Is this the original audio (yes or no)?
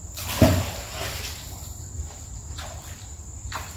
yes